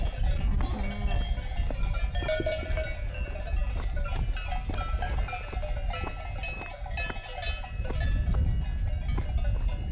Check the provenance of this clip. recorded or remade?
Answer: recorded